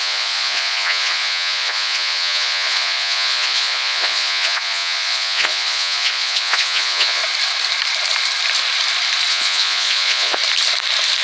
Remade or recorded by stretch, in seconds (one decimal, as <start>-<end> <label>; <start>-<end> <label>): 0.0-7.2 remade; 7.2-9.3 recorded; 9.3-10.4 remade; 10.4-11.2 recorded